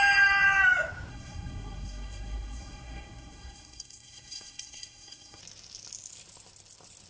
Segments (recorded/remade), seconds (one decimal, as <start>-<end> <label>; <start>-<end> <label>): 0.0-1.1 recorded; 1.1-5.4 remade; 5.4-7.1 recorded